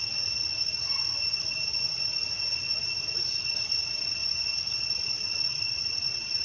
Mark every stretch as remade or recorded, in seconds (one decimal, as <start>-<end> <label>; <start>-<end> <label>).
0.0-0.6 remade; 0.6-3.4 recorded; 3.4-4.2 remade; 4.2-4.8 recorded; 4.8-6.4 remade